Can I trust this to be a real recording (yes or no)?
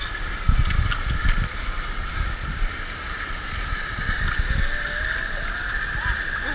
yes